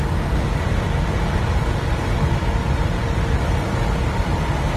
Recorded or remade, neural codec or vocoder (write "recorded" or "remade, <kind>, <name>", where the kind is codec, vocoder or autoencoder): recorded